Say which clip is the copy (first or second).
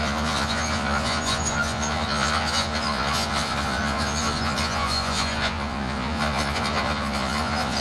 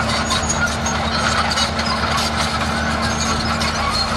first